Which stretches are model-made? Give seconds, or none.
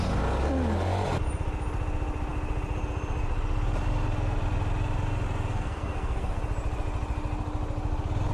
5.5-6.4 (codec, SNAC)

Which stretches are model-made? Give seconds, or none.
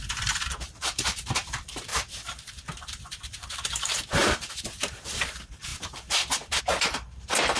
0.0-7.6 (vocoder, BigVGAN v2)